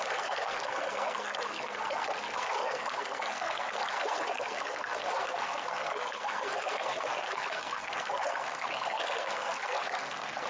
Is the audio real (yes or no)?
no